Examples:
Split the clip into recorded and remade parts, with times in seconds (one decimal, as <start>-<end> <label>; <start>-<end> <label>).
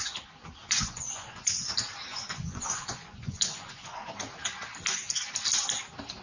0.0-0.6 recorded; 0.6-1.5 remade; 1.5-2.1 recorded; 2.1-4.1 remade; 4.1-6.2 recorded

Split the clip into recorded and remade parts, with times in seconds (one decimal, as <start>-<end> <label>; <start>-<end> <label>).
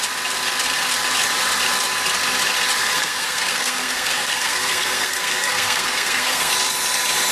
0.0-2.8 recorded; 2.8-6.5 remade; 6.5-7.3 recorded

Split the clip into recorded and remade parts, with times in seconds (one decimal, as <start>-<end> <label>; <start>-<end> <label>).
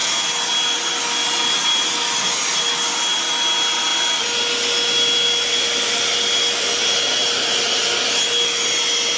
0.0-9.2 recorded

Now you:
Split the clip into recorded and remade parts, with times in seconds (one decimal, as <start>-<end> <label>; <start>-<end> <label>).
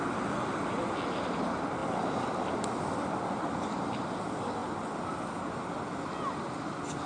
0.0-7.1 recorded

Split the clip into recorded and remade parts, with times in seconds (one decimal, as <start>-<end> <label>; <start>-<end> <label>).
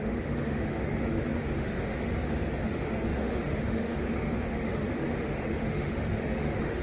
0.0-6.8 remade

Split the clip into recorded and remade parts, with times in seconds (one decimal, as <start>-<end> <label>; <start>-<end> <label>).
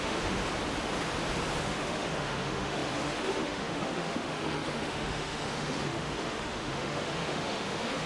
0.0-0.4 remade; 0.4-1.6 recorded; 1.6-8.1 remade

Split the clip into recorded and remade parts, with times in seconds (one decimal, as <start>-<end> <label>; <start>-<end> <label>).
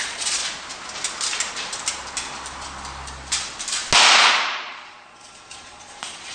0.0-0.4 remade; 0.4-4.2 recorded; 4.2-6.3 remade